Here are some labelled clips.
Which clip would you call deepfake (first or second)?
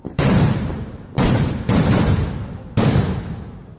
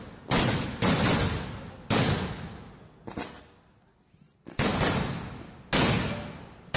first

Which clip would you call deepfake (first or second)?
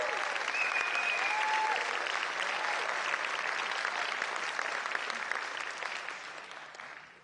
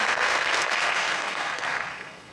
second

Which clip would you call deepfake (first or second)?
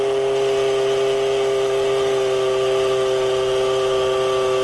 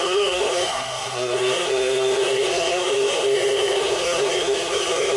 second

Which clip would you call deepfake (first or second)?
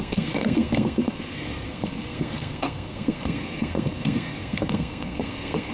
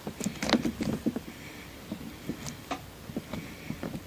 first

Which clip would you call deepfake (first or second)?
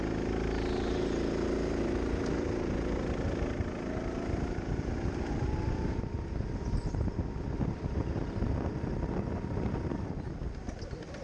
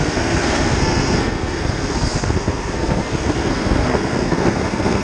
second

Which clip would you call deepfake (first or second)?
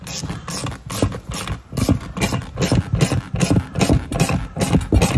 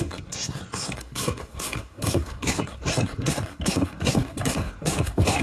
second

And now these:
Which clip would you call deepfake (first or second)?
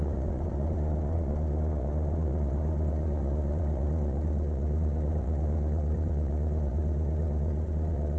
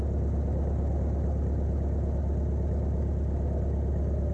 first